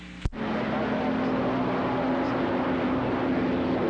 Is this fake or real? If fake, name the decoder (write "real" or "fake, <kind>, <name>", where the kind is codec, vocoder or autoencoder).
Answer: real